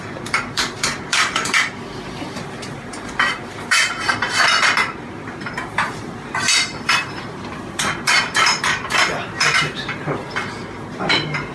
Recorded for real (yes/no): no